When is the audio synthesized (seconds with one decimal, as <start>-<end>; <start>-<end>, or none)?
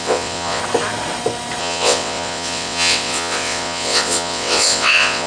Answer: 0.0-0.6; 1.6-5.3